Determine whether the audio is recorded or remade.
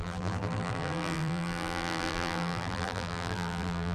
remade